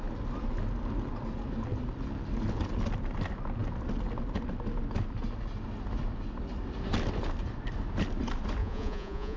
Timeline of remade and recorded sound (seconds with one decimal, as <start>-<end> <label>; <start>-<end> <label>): 0.0-8.6 recorded; 8.6-9.4 remade